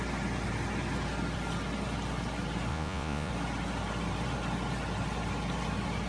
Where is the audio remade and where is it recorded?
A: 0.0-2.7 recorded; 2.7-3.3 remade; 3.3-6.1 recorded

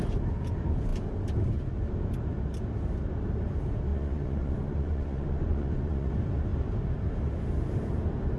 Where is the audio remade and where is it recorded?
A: 0.0-3.9 recorded; 3.9-6.1 remade; 6.1-8.4 recorded

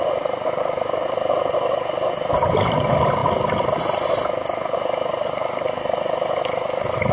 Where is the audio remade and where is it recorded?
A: 0.0-7.1 recorded

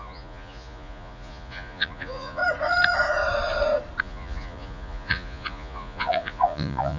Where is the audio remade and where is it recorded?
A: 0.0-2.4 remade; 2.4-4.0 recorded; 4.0-7.0 remade